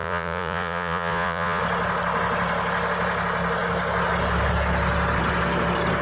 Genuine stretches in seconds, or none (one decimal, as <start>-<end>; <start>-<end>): 1.6-6.0